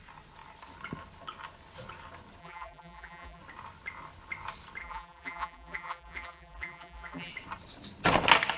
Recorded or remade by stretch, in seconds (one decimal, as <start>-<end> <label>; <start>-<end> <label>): 0.0-2.4 recorded; 2.4-3.4 remade; 3.4-4.8 recorded; 4.8-7.3 remade; 7.3-8.6 recorded